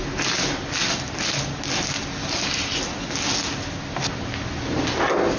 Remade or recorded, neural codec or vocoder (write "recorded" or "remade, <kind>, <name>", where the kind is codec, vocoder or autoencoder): recorded